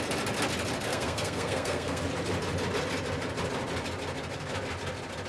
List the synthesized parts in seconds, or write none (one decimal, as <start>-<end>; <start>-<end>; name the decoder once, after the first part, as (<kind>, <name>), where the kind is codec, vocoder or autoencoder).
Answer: 0.9-2.0 (codec, SNAC)